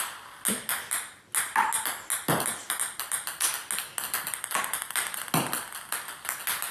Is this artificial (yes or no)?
no